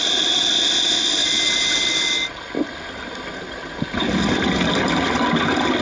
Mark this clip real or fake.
real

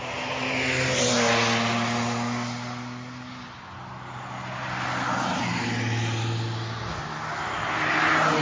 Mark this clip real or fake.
real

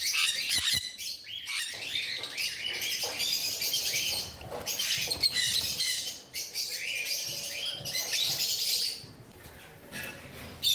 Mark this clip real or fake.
fake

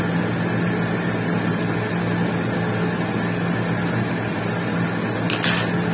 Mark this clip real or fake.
real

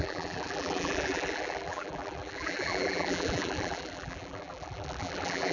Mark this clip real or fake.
fake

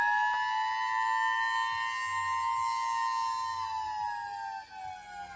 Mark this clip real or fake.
real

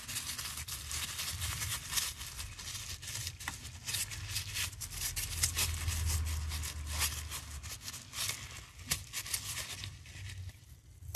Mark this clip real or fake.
real